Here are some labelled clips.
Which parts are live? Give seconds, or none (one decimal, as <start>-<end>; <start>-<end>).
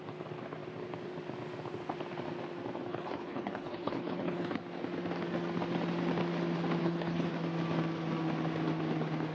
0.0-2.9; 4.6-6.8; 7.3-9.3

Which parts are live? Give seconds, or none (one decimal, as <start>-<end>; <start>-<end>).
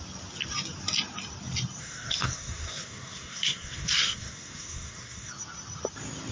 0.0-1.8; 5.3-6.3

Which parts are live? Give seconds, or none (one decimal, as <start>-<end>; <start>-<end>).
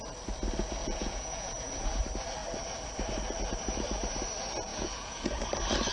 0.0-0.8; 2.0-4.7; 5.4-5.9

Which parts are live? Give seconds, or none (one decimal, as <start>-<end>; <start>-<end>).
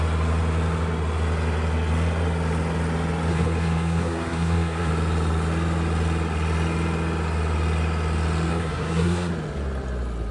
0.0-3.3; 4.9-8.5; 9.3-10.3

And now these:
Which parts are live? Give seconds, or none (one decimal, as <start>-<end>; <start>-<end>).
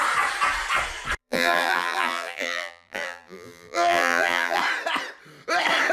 0.0-1.2; 4.6-5.9